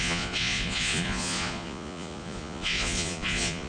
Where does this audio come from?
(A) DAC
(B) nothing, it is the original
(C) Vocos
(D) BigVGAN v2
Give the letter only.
C